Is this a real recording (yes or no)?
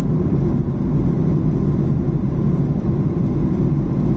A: yes